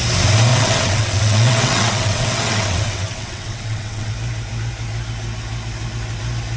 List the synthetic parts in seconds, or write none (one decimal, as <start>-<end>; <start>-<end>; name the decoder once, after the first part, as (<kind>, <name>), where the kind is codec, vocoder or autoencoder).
0.5-4.1 (vocoder, WaveNeXt)